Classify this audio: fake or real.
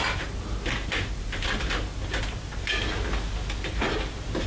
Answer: real